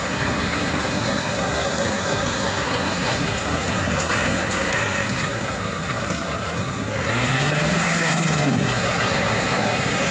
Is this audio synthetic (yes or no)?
yes